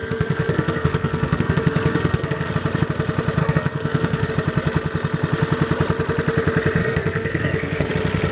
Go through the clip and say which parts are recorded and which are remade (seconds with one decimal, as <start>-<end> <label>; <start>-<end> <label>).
0.0-2.5 remade; 2.5-3.4 recorded; 3.4-4.3 remade; 4.3-6.8 recorded; 6.8-7.9 remade; 7.9-8.3 recorded